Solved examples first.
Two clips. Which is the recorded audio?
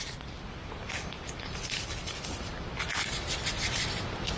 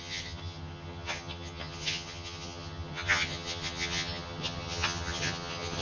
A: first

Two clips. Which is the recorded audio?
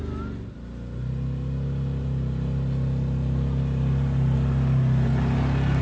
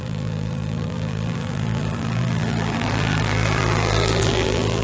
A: first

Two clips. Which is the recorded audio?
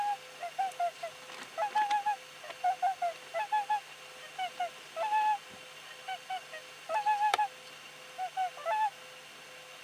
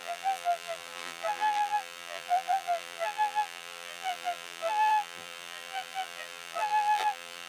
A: first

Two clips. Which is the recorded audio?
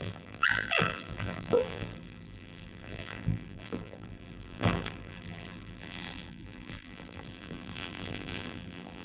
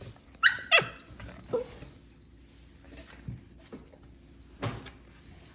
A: second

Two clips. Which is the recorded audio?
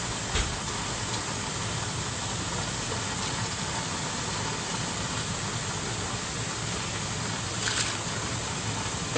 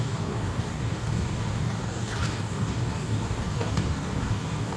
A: first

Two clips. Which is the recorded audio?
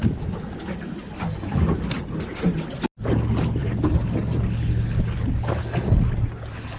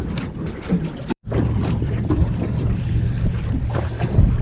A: first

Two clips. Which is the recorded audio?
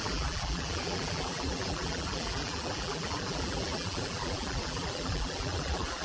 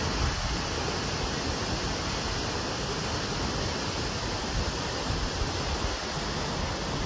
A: second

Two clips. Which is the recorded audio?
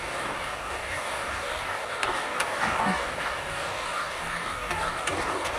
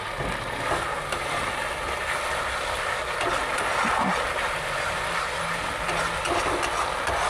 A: second